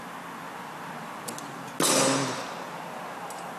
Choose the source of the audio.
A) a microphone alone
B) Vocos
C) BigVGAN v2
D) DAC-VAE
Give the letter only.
A